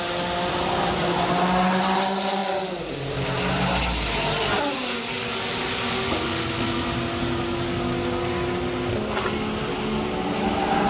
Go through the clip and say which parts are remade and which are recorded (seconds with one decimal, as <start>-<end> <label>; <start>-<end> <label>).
0.0-10.9 recorded

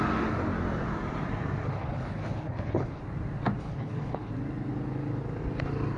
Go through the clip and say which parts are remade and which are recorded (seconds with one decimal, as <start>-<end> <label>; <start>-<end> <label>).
0.0-1.6 recorded; 1.6-3.0 remade; 3.0-3.6 recorded; 3.6-4.3 remade; 4.3-6.0 recorded